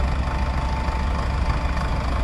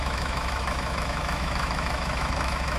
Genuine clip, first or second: first